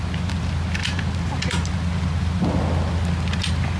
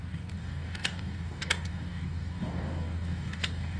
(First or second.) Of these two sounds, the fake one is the second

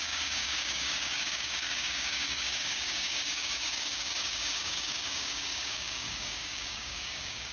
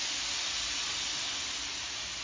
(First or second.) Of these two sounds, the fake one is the first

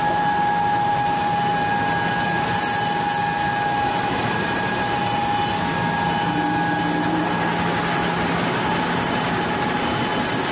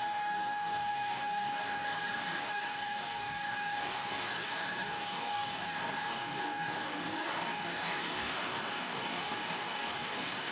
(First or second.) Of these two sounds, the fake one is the second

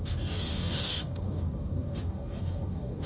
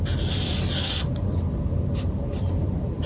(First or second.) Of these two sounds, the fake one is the first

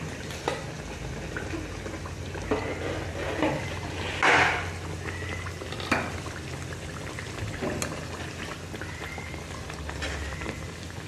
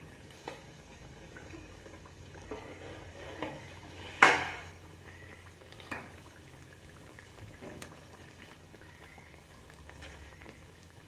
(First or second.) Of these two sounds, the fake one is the second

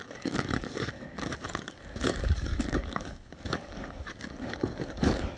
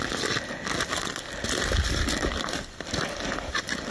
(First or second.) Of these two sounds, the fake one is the first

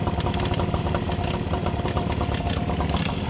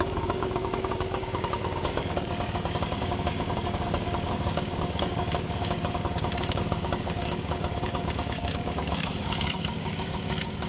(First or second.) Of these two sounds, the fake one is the second